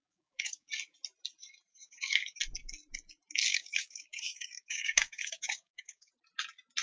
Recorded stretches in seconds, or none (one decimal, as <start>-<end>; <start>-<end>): 0.7-1.7; 2.4-3.5; 6.1-6.8